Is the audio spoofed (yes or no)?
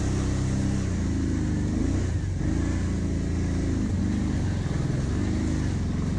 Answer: no